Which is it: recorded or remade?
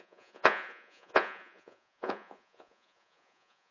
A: remade